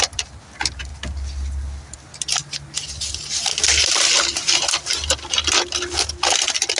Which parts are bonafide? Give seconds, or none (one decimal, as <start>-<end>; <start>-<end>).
0.0-6.8